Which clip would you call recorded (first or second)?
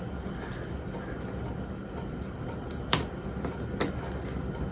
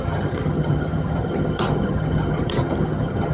first